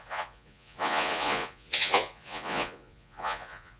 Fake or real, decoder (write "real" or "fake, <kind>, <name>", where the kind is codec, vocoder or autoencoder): fake, vocoder, Vocos